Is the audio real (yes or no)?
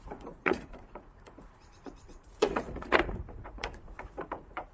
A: no